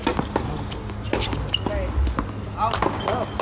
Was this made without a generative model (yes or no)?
yes